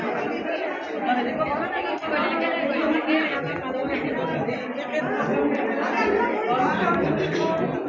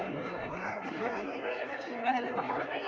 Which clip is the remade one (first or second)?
second